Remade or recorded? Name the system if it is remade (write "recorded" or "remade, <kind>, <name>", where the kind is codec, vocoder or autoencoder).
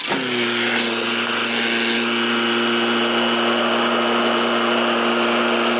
recorded